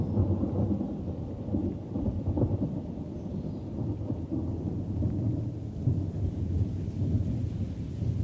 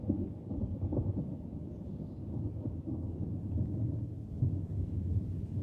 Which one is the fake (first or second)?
second